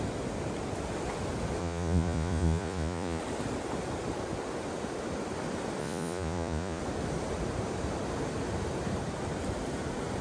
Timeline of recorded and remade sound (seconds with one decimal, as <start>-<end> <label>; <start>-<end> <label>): 0.0-1.6 recorded; 1.6-3.2 remade; 3.2-5.8 recorded; 5.8-6.8 remade; 6.8-10.2 recorded